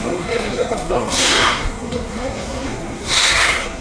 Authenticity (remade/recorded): remade